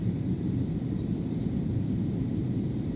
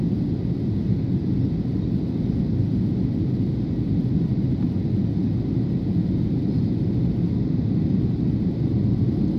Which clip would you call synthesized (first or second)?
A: first